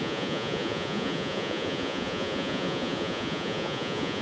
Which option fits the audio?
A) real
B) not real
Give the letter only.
B